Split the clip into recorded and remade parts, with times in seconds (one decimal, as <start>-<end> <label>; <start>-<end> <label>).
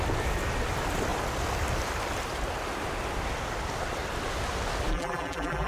0.0-4.9 recorded; 4.9-5.7 remade